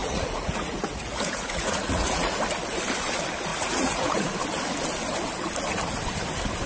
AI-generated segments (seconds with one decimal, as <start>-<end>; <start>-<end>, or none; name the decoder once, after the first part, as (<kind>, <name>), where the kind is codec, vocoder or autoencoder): 0.0-2.4 (vocoder, Vocos); 3.5-4.2